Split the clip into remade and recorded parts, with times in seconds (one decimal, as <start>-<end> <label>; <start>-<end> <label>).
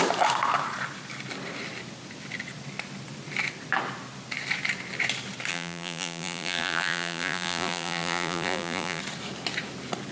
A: 0.0-5.5 recorded; 5.5-9.0 remade; 9.0-10.1 recorded